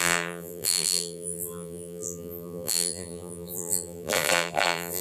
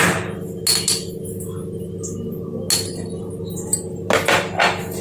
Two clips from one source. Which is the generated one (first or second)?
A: first